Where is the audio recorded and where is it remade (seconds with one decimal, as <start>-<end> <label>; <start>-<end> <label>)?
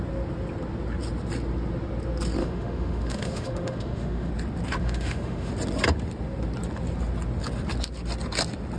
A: 0.0-2.4 recorded; 2.4-4.3 remade; 4.3-4.8 recorded; 4.8-5.5 remade; 5.5-8.8 recorded